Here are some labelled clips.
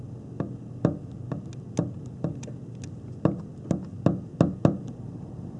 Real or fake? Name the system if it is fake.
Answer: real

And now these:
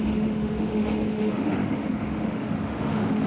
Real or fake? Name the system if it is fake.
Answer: fake, autoencoder, DAC-VAE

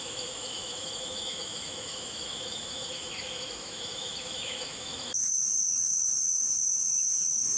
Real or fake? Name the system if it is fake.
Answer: fake, autoencoder, DAC-VAE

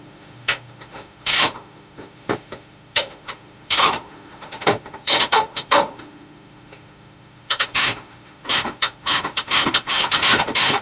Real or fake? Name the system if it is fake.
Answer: fake, autoencoder, DAC-VAE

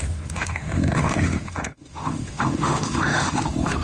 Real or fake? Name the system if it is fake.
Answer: fake, autoencoder, DAC-VAE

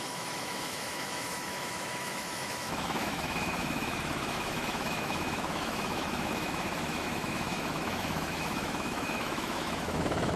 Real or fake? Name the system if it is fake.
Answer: fake, autoencoder, DAC-VAE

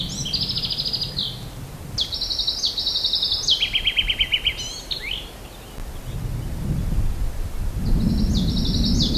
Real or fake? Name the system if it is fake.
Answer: real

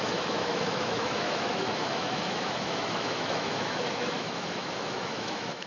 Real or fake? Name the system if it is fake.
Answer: fake, autoencoder, DAC-VAE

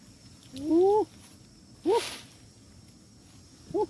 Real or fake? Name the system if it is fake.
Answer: real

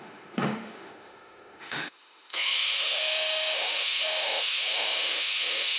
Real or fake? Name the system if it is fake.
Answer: fake, autoencoder, DAC-VAE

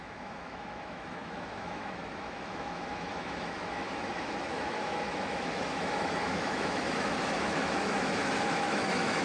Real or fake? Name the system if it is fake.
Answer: fake, autoencoder, DAC-VAE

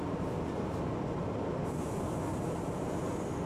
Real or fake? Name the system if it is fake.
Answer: real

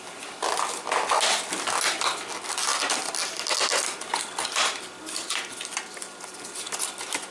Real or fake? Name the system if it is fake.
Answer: real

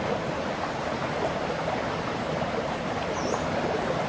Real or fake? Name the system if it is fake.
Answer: real